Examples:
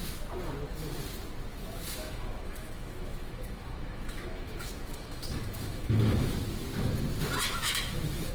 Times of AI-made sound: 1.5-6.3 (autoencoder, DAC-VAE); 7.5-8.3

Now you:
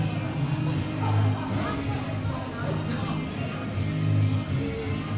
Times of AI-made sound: none

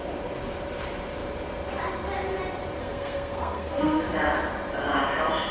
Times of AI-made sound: 2.8-4.0 (codec, SNAC)

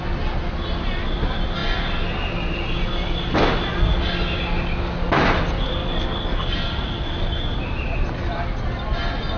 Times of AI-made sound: none

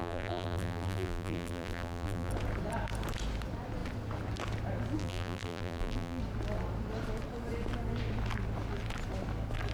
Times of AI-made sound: 0.0-2.3 (vocoder, BigVGAN v2); 5.0-6.2

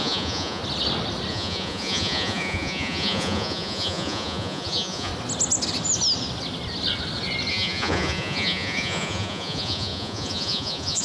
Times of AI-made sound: 0.0-0.6 (vocoder, Vocos); 1.3-5.1; 7.5-11.0

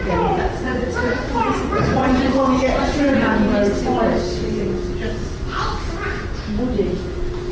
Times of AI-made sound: 0.0-2.9 (vocoder, Vocos)